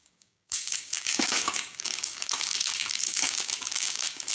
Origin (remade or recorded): remade